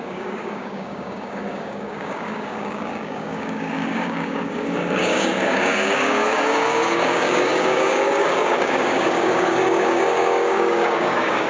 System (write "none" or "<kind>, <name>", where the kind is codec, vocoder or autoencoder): codec, DAC